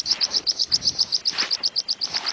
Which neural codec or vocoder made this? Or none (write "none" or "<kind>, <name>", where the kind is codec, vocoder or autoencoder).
none